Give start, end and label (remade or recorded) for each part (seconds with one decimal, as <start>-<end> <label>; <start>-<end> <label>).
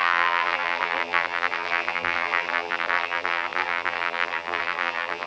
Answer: 0.0-5.3 remade